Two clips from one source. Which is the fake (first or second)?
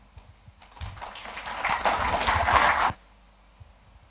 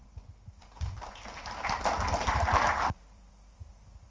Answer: second